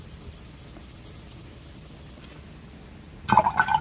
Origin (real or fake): real